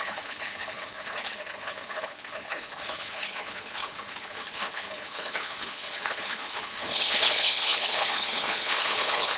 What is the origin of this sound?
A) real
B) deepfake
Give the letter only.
B